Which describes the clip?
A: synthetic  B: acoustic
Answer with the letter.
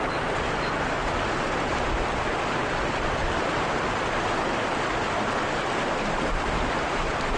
B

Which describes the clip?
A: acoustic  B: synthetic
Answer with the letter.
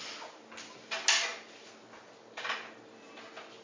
A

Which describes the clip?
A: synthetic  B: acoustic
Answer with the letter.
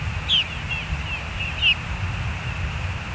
B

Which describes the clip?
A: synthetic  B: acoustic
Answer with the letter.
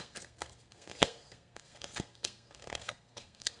A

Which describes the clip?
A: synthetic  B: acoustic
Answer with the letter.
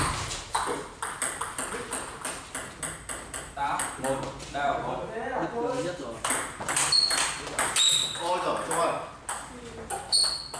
B